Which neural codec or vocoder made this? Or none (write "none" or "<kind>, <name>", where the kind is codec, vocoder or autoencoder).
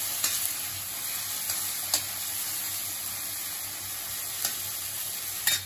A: none